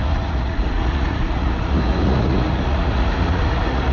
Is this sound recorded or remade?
remade